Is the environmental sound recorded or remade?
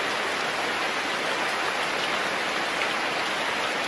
recorded